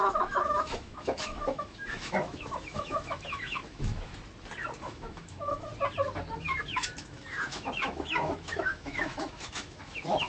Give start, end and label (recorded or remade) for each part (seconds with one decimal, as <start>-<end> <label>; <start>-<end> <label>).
0.0-4.1 remade; 4.1-4.8 recorded; 4.8-5.7 remade; 5.7-6.4 recorded; 6.4-10.3 remade